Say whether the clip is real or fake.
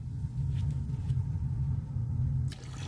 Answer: real